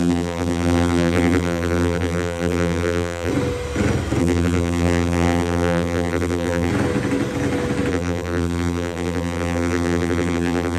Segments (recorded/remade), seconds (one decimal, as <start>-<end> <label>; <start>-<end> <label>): 0.0-3.3 remade; 3.3-4.2 recorded; 4.2-6.7 remade; 6.7-7.9 recorded; 7.9-10.8 remade